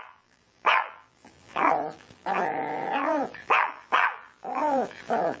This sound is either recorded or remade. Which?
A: remade